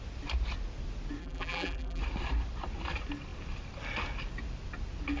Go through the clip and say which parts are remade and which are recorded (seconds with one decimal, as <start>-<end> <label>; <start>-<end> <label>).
0.0-1.2 recorded; 1.2-2.0 remade; 2.0-5.2 recorded